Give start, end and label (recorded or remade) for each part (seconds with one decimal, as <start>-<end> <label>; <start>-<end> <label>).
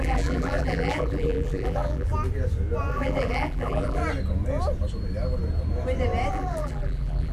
0.0-2.1 remade; 2.1-2.9 recorded; 2.9-4.0 remade; 4.0-6.3 recorded; 6.3-7.3 remade